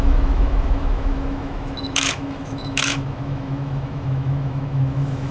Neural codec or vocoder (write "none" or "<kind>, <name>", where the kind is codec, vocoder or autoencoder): autoencoder, DAC-VAE